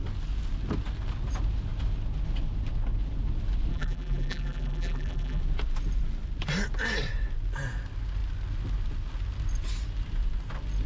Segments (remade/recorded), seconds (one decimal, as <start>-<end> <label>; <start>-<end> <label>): 0.0-3.7 recorded; 3.7-5.4 remade; 5.4-10.9 recorded